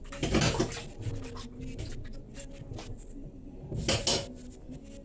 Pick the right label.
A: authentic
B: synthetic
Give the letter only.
A